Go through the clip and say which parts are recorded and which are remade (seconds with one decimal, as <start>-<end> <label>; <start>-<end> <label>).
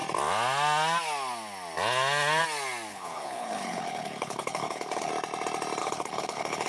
0.0-2.9 recorded; 2.9-5.1 remade; 5.1-5.8 recorded; 5.8-6.7 remade